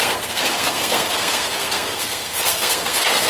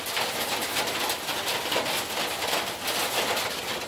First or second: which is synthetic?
first